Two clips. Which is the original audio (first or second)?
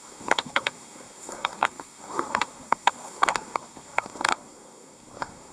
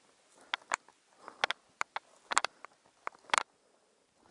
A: second